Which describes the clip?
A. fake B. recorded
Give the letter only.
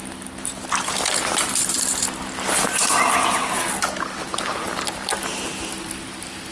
B